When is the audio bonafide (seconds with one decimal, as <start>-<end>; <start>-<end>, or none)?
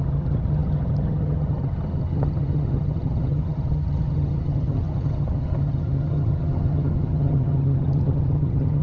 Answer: none